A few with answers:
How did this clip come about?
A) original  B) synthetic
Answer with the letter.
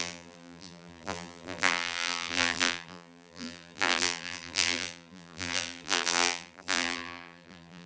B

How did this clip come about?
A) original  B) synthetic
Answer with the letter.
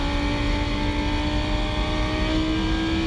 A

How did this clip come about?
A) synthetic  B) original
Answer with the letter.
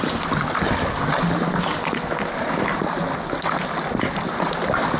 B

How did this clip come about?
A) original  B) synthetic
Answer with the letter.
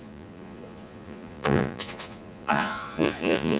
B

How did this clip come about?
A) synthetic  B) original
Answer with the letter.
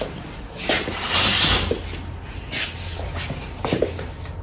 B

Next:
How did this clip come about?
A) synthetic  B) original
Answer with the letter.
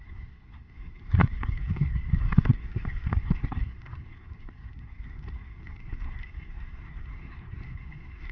A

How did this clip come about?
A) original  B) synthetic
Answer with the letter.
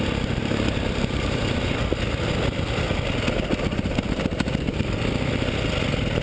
A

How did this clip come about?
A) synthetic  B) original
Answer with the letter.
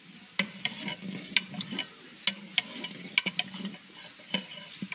B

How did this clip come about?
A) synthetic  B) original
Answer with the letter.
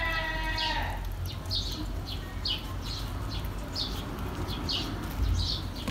B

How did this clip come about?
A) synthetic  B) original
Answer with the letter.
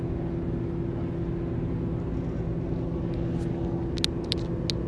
B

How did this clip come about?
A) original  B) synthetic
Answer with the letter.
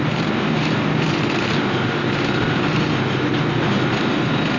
A